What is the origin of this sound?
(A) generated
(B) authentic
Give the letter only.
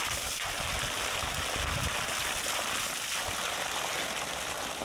B